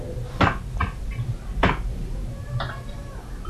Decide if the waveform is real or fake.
fake